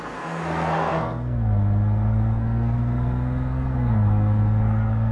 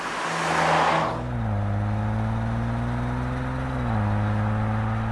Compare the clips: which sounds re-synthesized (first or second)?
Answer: first